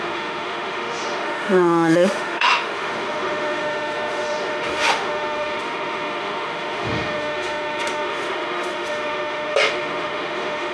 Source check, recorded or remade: remade